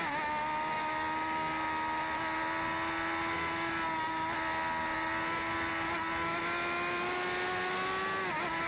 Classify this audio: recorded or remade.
recorded